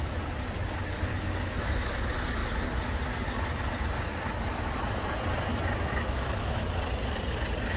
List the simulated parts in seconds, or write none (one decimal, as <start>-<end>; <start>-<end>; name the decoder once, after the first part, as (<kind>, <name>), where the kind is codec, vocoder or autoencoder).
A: 1.1-1.9 (autoencoder, DAC-VAE); 5.5-6.7